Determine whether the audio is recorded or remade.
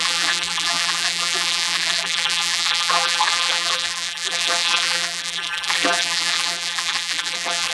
remade